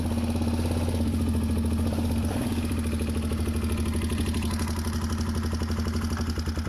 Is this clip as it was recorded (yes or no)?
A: yes